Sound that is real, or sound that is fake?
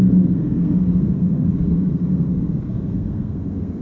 fake